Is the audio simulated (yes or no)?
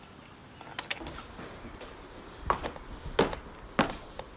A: no